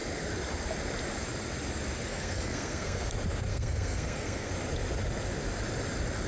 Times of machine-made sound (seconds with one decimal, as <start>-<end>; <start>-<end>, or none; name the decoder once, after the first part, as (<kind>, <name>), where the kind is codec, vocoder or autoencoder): 2.1-3.1 (codec, SNAC); 3.5-4.5

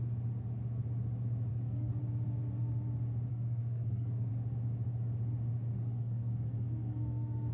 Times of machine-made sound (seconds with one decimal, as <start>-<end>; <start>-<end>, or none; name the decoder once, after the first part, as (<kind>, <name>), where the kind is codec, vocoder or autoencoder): 1.5-2.0 (codec, SNAC); 3.3-4.3; 5.7-7.5